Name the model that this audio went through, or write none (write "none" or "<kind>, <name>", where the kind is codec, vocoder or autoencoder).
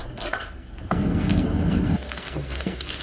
codec, SNAC